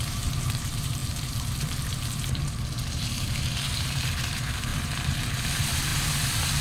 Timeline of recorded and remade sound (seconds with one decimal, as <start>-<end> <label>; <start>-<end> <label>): 0.0-6.6 remade